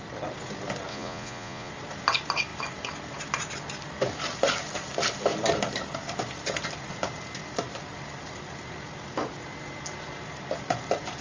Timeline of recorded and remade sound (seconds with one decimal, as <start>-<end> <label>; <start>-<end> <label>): 0.0-0.9 recorded; 0.9-1.7 remade; 1.7-11.2 recorded